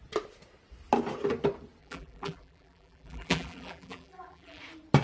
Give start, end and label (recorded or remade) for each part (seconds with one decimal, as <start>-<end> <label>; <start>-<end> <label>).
0.0-1.8 recorded; 1.8-4.6 remade; 4.6-5.0 recorded